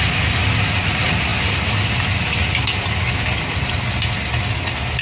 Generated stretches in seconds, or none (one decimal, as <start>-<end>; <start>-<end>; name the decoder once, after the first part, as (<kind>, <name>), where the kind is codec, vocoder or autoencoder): none